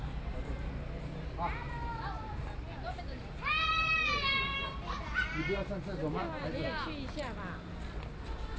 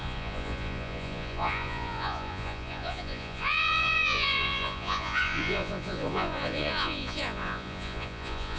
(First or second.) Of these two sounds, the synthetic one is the second